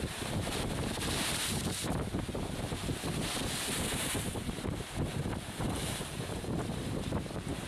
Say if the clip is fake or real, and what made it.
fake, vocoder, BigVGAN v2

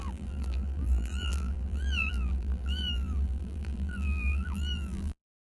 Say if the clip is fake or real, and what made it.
fake, vocoder, BigVGAN v2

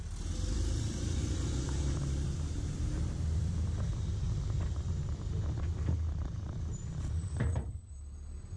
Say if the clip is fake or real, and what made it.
fake, vocoder, BigVGAN v2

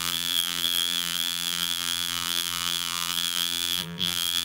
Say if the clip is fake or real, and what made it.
fake, vocoder, BigVGAN v2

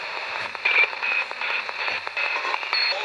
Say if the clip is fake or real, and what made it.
fake, vocoder, BigVGAN v2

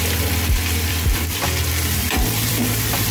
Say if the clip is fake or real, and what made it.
fake, vocoder, BigVGAN v2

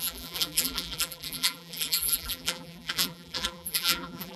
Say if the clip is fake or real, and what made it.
fake, vocoder, BigVGAN v2